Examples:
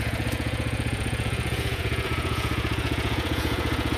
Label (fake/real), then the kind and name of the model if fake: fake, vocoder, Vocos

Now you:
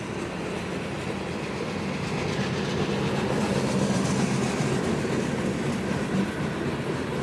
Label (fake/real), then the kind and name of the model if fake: real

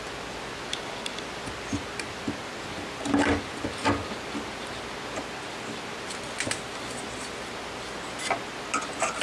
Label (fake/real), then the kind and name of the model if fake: real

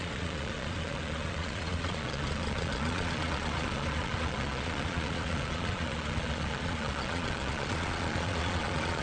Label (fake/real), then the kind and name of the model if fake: fake, vocoder, Vocos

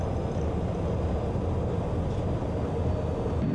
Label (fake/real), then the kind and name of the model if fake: real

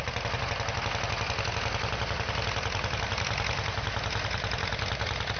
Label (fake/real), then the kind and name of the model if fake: real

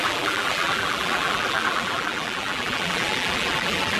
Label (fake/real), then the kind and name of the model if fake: fake, vocoder, BigVGAN v2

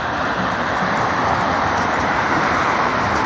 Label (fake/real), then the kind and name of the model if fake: fake, vocoder, BigVGAN v2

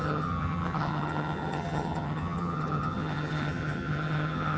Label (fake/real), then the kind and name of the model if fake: fake, vocoder, HiFi-GAN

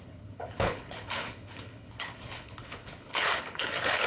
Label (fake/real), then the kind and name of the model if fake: fake, codec, HILCodec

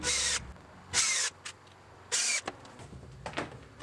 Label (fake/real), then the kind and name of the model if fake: real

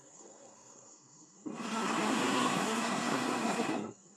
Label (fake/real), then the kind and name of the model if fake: fake, codec, SNAC